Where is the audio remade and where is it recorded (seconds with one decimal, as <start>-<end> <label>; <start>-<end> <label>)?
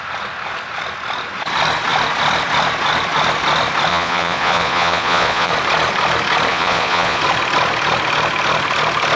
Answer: 0.0-3.9 recorded; 3.9-5.5 remade; 5.5-6.5 recorded; 6.5-7.2 remade; 7.2-9.2 recorded